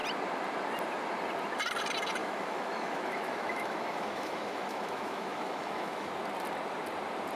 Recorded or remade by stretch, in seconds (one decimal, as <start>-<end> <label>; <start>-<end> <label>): 0.0-2.2 recorded; 2.2-6.1 remade; 6.1-7.4 recorded